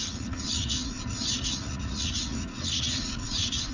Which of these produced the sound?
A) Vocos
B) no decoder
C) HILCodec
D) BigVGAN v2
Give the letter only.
A